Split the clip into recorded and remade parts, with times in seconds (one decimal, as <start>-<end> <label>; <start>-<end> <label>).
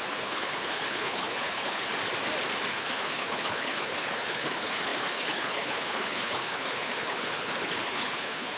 0.0-1.9 remade; 1.9-2.7 recorded; 2.7-8.6 remade